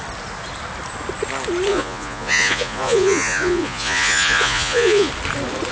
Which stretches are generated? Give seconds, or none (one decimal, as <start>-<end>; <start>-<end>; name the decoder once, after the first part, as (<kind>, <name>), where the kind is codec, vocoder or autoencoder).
1.7-5.1 (vocoder, Vocos)